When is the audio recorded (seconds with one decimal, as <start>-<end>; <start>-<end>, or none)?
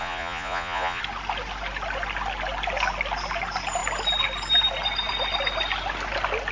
1.0-6.5